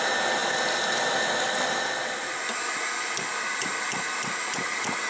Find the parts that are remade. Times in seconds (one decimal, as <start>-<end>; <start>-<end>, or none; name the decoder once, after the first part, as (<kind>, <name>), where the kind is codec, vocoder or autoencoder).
none